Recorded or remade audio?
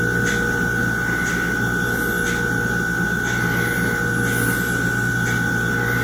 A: recorded